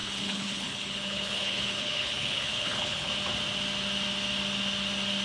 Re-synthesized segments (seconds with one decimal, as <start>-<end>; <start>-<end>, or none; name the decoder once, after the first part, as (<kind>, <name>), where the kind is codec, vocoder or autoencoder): 0.0-3.1 (codec, HILCodec)